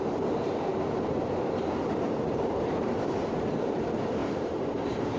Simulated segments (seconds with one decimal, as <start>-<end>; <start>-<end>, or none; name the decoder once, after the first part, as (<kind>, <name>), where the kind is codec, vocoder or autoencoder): 0.7-3.8 (vocoder, BigVGAN v2); 4.2-5.2